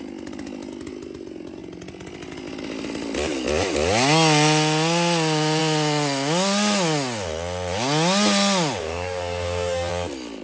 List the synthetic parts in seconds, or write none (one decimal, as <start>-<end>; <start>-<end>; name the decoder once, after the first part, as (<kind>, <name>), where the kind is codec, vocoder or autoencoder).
8.8-9.9 (codec, DAC)